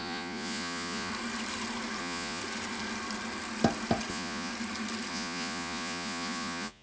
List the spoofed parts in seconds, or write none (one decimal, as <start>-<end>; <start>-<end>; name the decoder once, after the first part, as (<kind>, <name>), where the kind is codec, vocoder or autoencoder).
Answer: 0.0-1.1 (vocoder, Vocos); 2.0-2.4; 4.1-4.5; 5.1-6.8